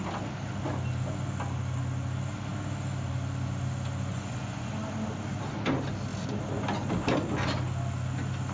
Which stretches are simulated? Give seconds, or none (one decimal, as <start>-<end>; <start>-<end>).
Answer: 4.1-4.7

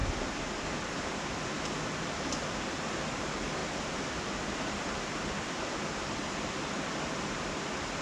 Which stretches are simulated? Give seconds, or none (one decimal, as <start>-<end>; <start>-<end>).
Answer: none

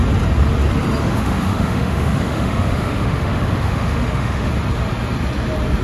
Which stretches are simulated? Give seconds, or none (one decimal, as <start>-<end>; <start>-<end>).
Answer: 1.0-4.5

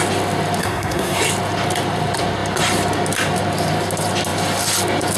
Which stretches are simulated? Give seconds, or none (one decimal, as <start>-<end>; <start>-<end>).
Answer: 0.6-1.2

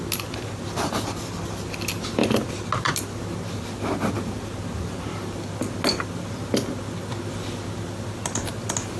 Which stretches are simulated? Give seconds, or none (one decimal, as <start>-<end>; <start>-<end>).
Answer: none

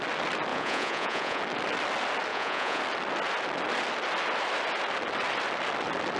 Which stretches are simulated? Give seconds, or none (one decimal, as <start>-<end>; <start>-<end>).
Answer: 0.5-1.4; 2.3-2.8

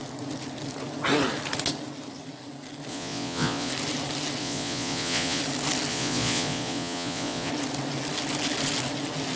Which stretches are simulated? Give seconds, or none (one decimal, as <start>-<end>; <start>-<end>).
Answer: 2.9-3.7; 4.4-5.4; 5.9-7.5

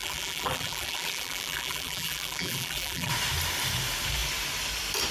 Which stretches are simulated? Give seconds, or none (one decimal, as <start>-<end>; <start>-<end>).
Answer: 0.0-3.1